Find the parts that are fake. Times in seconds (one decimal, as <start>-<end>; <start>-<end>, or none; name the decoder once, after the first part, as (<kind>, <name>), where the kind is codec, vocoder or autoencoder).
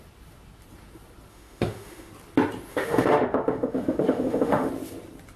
1.3-2.1 (autoencoder, DAC-VAE); 2.7-4.7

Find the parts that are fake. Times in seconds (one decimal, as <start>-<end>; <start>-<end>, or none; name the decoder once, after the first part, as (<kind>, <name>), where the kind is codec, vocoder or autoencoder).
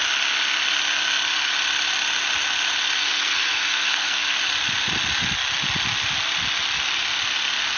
3.0-4.4 (codec, SNAC)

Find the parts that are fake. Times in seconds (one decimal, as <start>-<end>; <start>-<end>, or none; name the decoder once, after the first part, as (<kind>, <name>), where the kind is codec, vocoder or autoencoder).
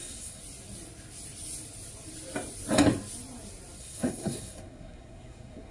0.0-0.4 (codec, SNAC); 3.8-5.7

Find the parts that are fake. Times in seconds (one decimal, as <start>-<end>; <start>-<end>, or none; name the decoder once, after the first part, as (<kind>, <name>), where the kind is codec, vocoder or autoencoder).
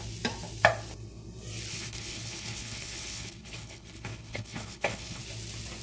1.7-5.2 (codec, HILCodec)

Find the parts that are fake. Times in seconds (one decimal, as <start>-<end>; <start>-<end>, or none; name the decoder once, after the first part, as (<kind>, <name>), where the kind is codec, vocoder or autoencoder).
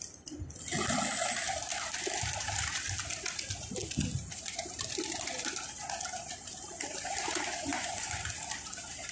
7.7-8.2 (vocoder, Vocos)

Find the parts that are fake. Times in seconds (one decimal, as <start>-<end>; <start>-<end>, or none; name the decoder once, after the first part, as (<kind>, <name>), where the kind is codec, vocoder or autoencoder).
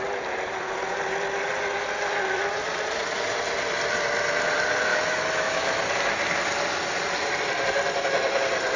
4.9-5.8 (autoencoder, DAC-VAE)